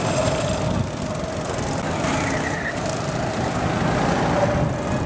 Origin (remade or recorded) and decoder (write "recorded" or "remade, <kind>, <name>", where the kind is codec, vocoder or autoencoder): recorded